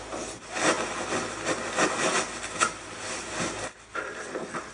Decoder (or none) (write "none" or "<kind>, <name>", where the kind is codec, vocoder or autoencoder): none